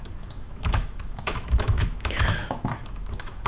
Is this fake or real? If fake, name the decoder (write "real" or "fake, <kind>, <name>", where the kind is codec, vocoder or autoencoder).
fake, autoencoder, DAC-VAE